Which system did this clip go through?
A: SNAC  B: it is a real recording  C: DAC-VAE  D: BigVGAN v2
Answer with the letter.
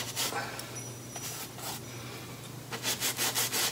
B